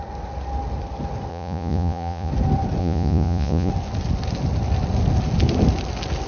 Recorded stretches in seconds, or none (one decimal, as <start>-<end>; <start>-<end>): 0.0-1.3; 2.3-2.8; 3.7-6.3